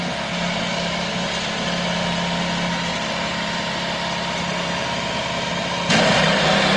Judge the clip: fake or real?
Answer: real